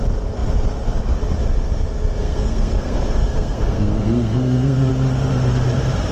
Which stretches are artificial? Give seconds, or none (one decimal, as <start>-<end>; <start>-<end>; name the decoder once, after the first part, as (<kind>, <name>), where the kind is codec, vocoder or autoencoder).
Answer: 2.2-4.9 (codec, SNAC)